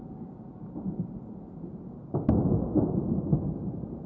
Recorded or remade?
recorded